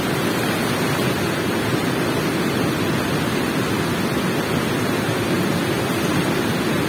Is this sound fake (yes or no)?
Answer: no